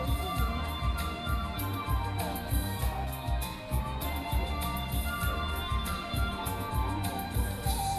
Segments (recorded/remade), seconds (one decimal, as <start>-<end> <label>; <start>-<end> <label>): 0.0-2.3 recorded; 2.3-3.8 remade; 3.8-5.5 recorded; 5.5-6.7 remade; 6.7-8.0 recorded